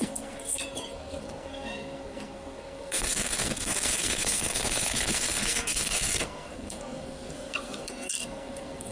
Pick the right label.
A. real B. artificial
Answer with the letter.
B